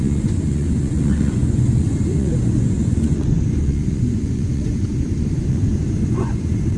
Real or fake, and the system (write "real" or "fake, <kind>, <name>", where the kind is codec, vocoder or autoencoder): fake, vocoder, Vocos